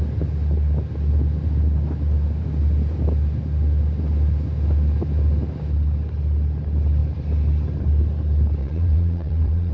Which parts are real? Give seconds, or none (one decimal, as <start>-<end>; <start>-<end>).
0.0-8.6